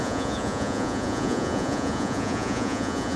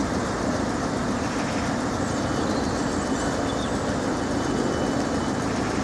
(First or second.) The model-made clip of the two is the first